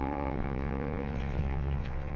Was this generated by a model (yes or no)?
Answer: yes